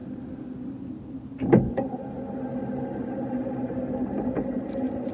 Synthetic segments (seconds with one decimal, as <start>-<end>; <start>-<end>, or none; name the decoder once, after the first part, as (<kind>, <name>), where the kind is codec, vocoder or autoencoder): none